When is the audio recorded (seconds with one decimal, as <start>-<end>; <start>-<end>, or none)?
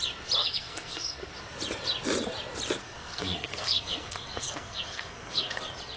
0.0-0.4; 1.3-2.8; 5.6-6.0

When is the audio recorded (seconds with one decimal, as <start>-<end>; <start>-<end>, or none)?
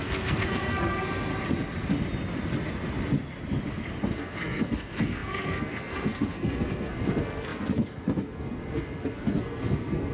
1.3-4.1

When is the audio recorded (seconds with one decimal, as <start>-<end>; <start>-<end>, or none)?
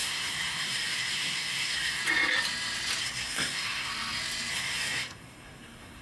2.0-3.0; 3.9-4.5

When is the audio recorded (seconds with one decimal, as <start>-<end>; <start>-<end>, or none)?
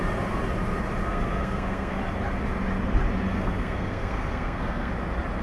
0.0-1.0; 2.0-3.3; 4.9-5.4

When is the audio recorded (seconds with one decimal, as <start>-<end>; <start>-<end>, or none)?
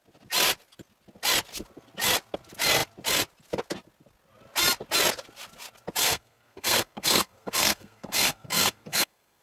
0.0-6.0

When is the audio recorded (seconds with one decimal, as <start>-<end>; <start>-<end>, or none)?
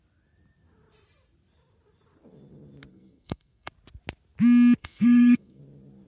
0.0-2.9; 3.7-4.8; 5.6-6.1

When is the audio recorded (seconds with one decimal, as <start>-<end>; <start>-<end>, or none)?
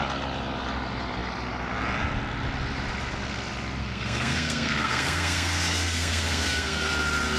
0.0-3.8; 6.9-7.4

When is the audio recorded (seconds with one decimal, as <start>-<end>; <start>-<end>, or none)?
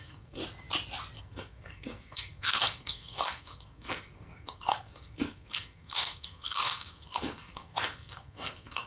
0.4-1.2